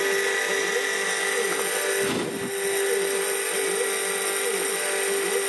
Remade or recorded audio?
recorded